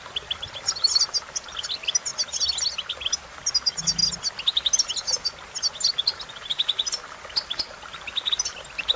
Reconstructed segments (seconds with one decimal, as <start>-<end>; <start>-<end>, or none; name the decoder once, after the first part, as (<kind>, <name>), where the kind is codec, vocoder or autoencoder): none